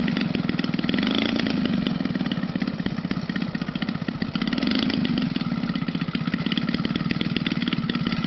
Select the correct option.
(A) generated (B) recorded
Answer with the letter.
B